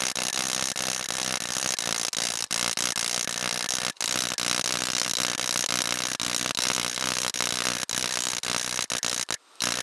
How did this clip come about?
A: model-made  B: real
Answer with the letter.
B